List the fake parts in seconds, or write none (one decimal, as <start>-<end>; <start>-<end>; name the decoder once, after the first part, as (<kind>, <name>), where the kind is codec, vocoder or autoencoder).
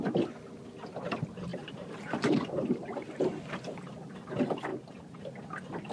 1.5-3.4 (vocoder, BigVGAN v2); 4.7-5.2